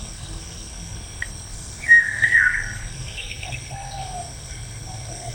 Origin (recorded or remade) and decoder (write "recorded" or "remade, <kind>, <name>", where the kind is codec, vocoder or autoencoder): remade, codec, SNAC